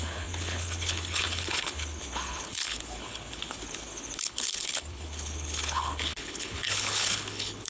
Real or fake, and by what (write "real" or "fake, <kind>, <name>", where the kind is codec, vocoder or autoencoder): fake, codec, HILCodec